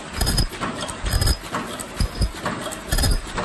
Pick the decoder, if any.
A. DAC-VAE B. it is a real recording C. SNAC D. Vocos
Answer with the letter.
B